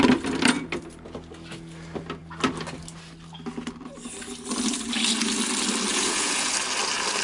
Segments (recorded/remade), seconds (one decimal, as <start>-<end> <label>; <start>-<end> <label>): 0.0-5.9 recorded; 5.9-6.5 remade; 6.5-7.2 recorded